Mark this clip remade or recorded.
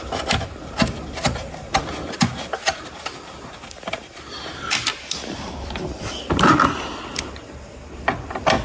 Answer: recorded